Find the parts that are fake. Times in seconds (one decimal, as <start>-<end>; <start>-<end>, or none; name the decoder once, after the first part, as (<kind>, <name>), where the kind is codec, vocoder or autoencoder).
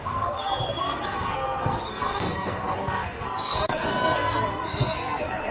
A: 0.0-5.5 (codec, SNAC)